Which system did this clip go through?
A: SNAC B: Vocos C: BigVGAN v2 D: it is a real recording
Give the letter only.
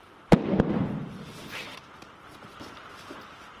D